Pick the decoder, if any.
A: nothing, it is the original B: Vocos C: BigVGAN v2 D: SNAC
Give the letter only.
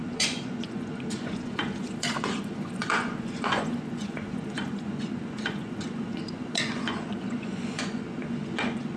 B